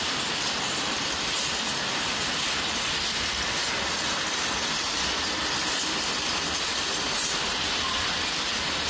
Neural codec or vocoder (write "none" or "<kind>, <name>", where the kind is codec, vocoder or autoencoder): none